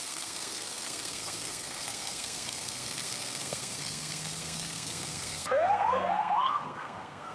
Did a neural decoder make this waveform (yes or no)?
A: yes